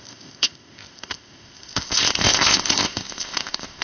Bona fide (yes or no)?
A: no